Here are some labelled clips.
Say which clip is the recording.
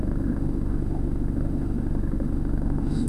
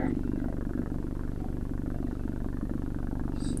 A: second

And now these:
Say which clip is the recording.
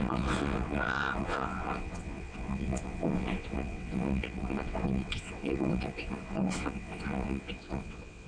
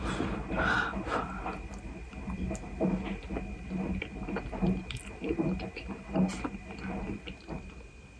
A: second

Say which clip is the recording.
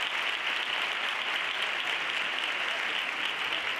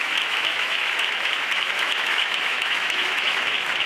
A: first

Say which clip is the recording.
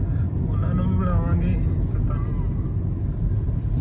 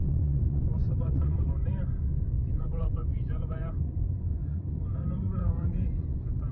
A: first